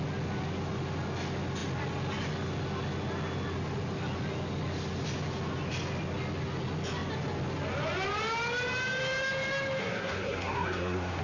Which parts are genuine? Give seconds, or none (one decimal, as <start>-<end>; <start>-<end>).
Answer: 0.0-9.8